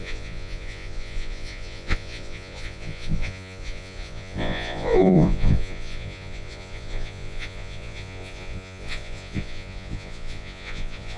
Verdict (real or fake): fake